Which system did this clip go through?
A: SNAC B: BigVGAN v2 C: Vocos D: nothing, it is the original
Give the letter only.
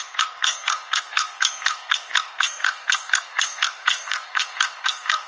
A